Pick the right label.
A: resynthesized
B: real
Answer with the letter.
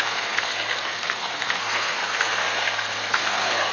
A